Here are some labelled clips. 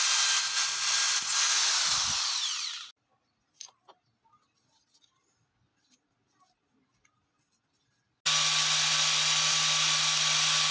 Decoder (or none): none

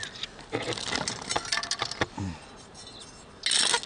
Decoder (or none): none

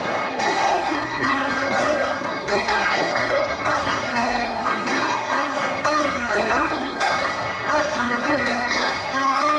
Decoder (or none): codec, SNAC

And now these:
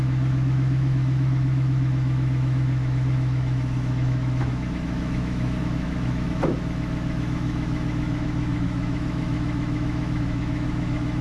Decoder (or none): autoencoder, DAC-VAE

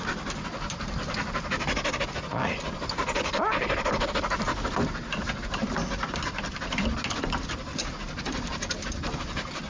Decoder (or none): none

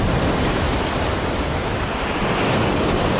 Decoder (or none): none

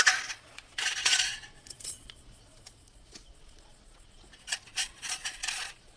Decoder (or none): vocoder, Vocos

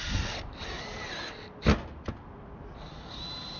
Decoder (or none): none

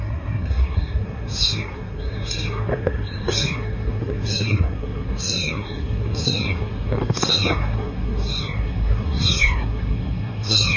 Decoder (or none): codec, SNAC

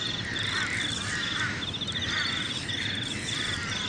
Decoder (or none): vocoder, BigVGAN v2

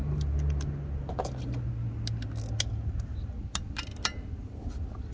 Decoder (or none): none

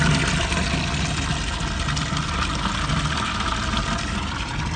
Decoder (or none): none